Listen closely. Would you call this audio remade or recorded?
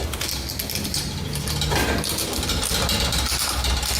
recorded